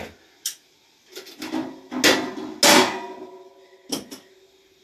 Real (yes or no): yes